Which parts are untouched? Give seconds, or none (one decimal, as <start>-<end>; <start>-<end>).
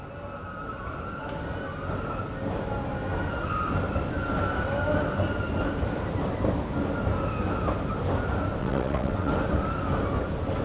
0.0-8.6; 9.3-10.6